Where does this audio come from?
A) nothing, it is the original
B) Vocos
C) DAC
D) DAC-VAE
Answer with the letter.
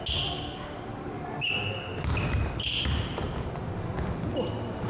A